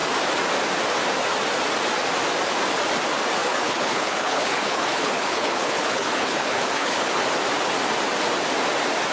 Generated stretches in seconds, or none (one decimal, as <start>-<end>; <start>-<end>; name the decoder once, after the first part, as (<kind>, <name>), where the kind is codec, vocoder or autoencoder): 3.4-7.1 (codec, HILCodec)